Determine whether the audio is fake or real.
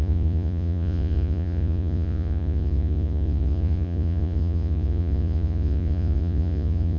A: fake